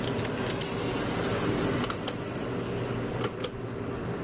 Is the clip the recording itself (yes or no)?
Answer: yes